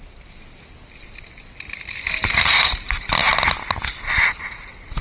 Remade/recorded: recorded